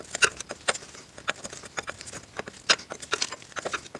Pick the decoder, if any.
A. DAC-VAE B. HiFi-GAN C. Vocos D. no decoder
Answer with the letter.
D